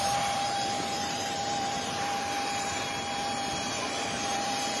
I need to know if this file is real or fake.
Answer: fake